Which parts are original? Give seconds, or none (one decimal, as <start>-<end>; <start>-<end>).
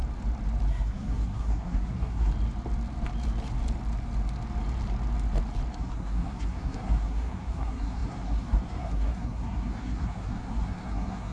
0.0-0.7; 2.3-5.7